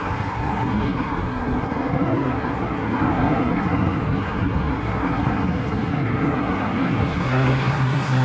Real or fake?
fake